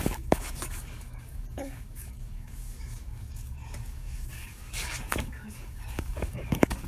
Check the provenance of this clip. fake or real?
fake